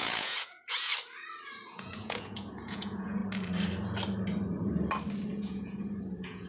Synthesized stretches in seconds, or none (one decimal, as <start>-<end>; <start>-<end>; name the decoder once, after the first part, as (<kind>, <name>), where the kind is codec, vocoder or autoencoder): 0.0-0.9 (vocoder, Vocos); 1.7-3.2; 5.3-6.5